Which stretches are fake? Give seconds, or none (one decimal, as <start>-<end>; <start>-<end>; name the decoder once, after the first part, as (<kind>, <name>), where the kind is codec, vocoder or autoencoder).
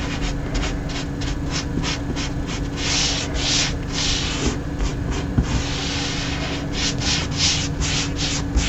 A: none